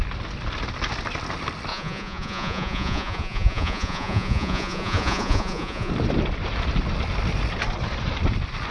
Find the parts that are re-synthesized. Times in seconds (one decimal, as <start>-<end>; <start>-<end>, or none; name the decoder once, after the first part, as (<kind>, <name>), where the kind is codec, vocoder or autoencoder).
1.7-5.9 (vocoder, Vocos)